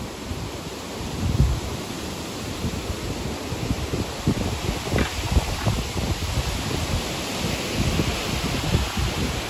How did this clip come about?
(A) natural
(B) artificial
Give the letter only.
A